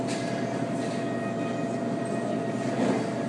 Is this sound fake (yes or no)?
no